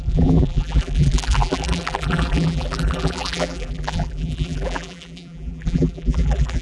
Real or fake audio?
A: fake